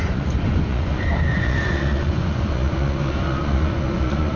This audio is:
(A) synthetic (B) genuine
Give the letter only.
A